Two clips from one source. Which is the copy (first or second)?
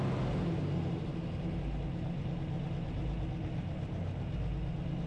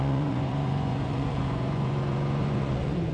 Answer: second